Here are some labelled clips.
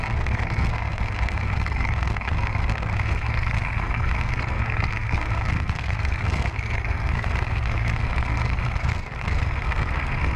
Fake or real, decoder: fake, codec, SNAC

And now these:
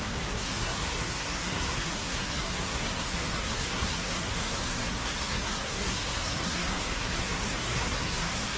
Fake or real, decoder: fake, codec, SNAC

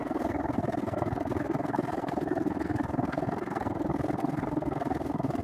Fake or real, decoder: fake, codec, SNAC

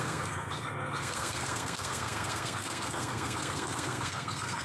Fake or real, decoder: fake, codec, SNAC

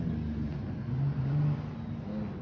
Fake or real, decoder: real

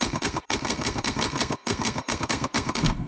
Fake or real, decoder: fake, codec, SNAC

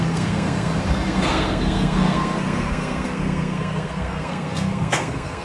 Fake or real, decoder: fake, codec, SNAC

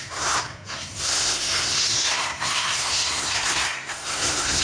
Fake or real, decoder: fake, codec, SNAC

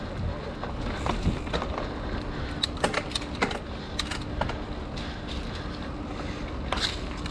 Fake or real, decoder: real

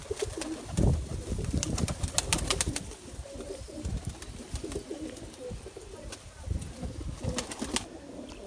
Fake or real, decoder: real